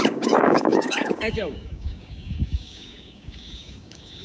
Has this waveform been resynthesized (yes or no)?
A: yes